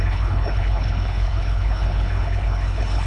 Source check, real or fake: fake